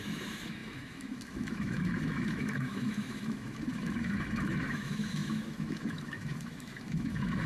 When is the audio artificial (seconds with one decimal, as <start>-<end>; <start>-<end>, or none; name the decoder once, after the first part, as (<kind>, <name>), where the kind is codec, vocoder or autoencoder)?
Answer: 0.0-7.5 (autoencoder, DAC-VAE)